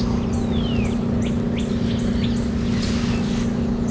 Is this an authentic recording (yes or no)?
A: yes